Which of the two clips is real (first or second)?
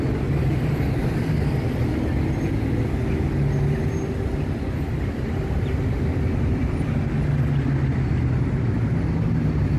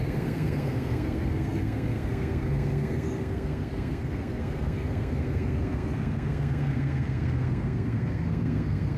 first